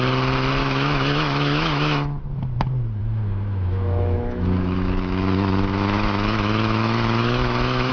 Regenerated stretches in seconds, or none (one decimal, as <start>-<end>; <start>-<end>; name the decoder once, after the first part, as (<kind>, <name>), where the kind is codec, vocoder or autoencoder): 0.6-2.2 (autoencoder, DAC-VAE); 3.0-7.9